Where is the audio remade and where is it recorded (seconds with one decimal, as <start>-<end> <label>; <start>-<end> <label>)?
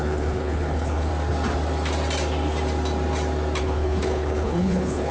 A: 0.0-1.1 remade; 1.1-3.6 recorded; 3.6-5.1 remade